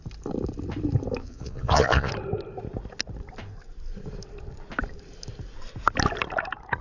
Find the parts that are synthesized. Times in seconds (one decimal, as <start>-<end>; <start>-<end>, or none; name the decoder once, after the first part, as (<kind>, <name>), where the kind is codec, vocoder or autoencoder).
1.2-2.1 (vocoder, Vocos)